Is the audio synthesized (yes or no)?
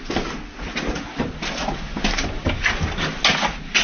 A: no